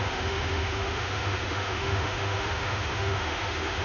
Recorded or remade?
remade